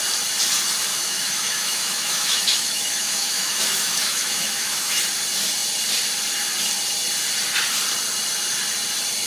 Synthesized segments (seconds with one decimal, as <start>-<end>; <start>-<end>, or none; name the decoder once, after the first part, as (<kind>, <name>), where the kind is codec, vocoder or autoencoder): 0.9-5.0 (autoencoder, DAC-VAE)